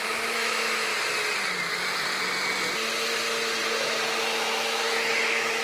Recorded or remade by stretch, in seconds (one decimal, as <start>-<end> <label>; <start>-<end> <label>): 0.0-0.9 remade; 0.9-4.2 recorded; 4.2-5.6 remade